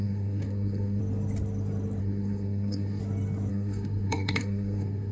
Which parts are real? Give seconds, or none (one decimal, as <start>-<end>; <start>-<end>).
1.0-2.0; 3.0-3.5